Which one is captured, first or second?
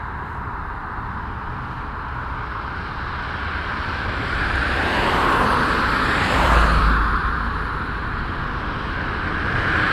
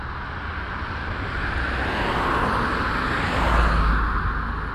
second